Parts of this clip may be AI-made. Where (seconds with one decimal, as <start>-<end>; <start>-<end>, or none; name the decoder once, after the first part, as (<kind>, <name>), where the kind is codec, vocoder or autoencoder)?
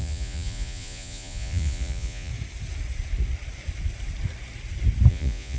0.0-2.3 (vocoder, Vocos); 5.1-5.6